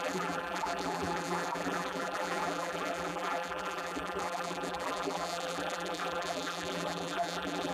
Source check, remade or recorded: remade